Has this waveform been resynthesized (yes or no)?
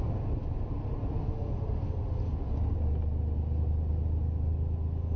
no